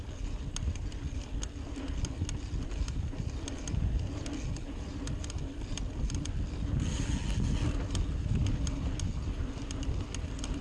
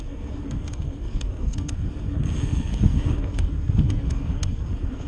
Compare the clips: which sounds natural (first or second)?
first